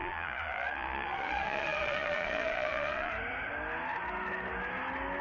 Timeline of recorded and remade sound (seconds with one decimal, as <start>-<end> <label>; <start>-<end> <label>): 0.0-3.1 remade; 3.1-5.2 recorded